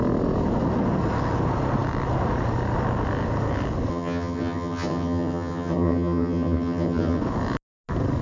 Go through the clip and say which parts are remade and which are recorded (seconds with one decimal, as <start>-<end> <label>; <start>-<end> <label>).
0.0-3.9 recorded; 3.9-7.2 remade; 7.2-8.2 recorded